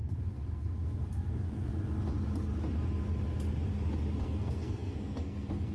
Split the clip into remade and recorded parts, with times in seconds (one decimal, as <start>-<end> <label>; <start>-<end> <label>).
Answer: 0.0-1.7 remade; 1.7-4.2 recorded; 4.2-5.7 remade